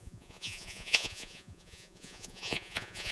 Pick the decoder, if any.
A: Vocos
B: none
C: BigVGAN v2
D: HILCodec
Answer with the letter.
A